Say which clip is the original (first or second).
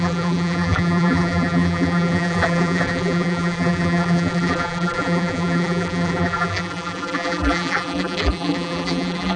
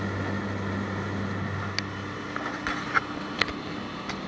second